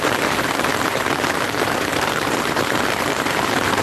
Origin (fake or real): fake